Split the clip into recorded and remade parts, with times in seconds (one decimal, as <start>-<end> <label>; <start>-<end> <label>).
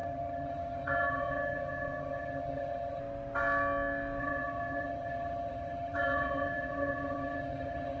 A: 0.0-3.0 remade; 3.0-4.2 recorded; 4.2-8.0 remade